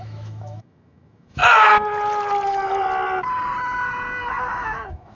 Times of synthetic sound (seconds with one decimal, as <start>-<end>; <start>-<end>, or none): 0.0-1.4; 4.5-5.1